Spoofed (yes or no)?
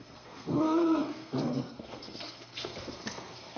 yes